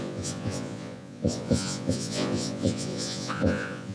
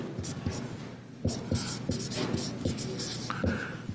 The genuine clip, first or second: second